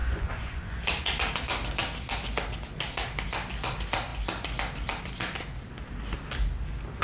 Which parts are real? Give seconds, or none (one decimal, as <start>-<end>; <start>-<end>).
0.9-7.0